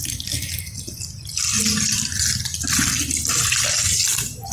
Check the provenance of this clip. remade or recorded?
recorded